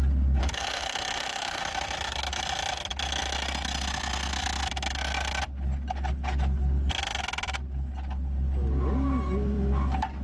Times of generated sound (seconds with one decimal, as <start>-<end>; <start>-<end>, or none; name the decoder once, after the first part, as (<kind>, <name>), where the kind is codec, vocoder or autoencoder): 0.4-1.6 (autoencoder, DAC-VAE)